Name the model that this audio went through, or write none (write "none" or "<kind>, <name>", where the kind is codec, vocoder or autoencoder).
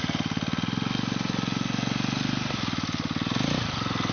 none